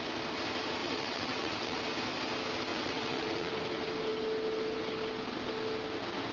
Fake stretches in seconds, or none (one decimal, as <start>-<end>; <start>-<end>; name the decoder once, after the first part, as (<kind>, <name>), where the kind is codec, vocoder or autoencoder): 0.8-1.8 (vocoder, WaveNeXt); 2.7-3.5